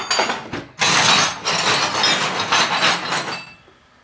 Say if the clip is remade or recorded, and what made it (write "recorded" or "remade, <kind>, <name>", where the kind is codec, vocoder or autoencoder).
recorded